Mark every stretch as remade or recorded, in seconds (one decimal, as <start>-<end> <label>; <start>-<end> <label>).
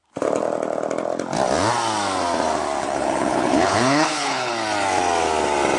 0.0-2.8 recorded; 2.8-4.5 remade; 4.5-5.8 recorded